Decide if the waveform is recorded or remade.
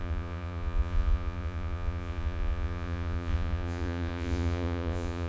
remade